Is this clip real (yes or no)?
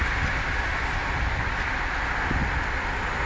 yes